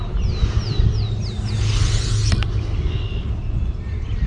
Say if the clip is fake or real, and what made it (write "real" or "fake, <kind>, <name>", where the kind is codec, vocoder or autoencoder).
real